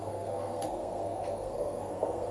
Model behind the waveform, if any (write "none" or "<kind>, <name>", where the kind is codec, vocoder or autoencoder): codec, SNAC